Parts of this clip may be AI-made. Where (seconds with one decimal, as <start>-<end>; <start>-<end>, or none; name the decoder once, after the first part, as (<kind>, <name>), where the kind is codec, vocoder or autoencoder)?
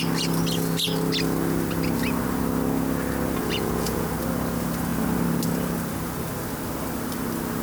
3.4-4.1 (vocoder, Vocos)